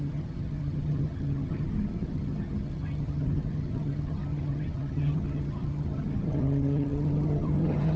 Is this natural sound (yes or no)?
no